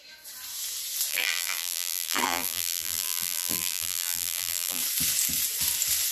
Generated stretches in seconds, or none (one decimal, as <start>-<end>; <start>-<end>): 1.1-4.8